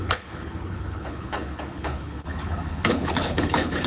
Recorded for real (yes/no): no